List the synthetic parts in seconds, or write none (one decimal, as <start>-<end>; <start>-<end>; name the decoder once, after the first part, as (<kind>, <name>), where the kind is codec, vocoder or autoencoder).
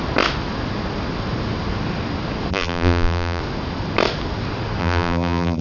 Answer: 2.5-3.4 (vocoder, BigVGAN v2); 4.8-5.6